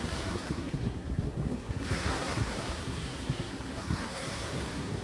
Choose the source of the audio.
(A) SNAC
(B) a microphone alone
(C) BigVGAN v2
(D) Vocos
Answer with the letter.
A